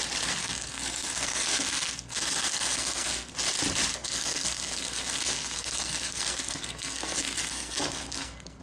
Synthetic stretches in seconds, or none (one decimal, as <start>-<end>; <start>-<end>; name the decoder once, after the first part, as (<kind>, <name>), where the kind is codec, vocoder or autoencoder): 0.4-3.3 (codec, SNAC); 3.9-8.6